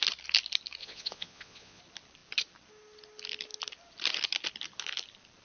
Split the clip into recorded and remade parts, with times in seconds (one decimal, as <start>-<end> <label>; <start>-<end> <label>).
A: 0.0-0.8 recorded; 0.8-1.8 remade; 1.8-5.4 recorded